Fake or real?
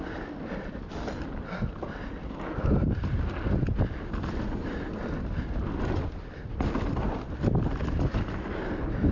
real